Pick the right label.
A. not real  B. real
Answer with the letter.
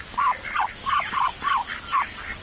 B